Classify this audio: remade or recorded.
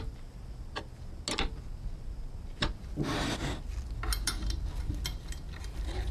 recorded